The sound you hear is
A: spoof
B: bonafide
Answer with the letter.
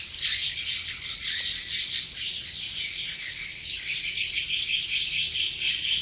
B